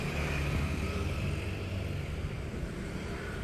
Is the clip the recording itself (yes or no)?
no